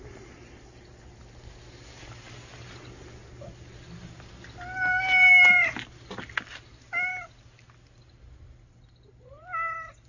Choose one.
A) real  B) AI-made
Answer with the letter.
A